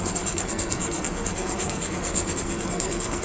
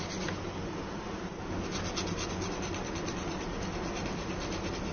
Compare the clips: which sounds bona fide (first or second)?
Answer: second